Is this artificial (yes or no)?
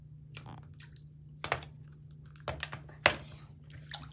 no